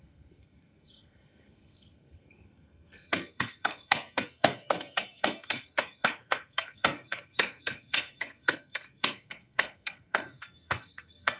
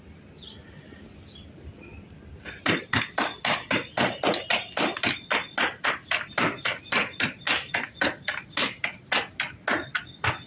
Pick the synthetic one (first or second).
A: first